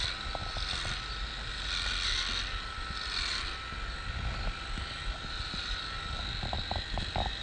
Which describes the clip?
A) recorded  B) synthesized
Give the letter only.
A